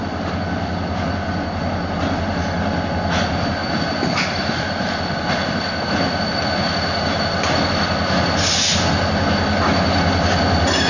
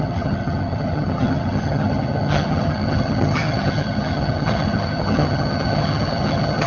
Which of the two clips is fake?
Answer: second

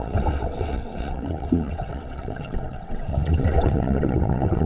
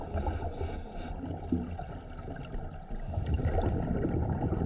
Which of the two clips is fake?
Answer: first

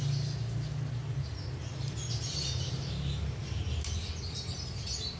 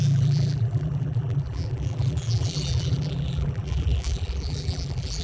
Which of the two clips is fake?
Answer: second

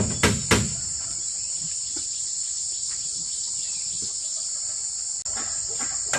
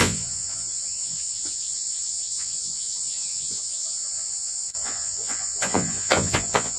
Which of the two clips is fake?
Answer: second